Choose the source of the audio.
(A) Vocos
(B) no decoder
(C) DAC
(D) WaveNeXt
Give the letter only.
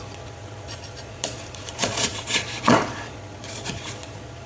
A